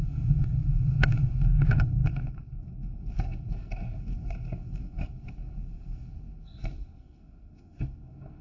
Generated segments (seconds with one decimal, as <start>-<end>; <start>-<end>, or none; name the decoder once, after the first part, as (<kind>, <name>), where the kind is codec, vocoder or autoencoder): 0.0-8.4 (codec, SNAC)